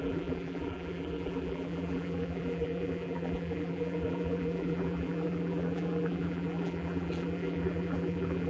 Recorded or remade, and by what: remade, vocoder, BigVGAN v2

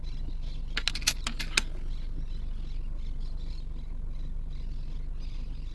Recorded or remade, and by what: recorded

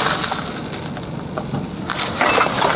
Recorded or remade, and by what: recorded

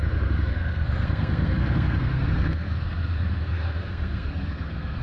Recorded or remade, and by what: remade, codec, SNAC